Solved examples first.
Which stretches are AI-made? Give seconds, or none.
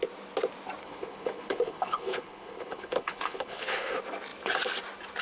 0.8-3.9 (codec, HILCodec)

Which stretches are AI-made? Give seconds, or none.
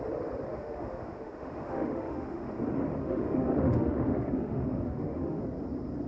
0.5-2.6 (autoencoder, DAC-VAE); 3.0-5.4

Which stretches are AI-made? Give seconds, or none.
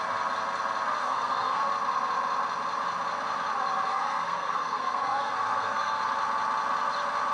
1.0-1.7 (codec, SNAC); 3.9-6.0